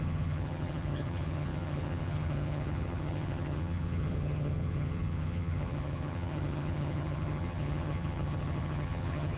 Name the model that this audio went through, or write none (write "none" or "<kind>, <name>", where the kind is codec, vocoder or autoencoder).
vocoder, HiFi-GAN